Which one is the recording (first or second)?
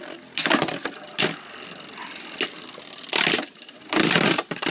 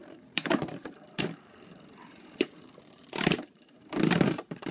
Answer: first